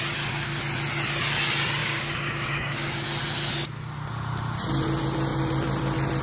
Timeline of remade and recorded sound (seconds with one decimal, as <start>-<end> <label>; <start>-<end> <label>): 0.0-1.8 recorded; 1.8-3.0 remade; 3.0-6.2 recorded